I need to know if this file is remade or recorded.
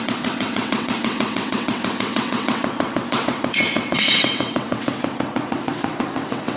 remade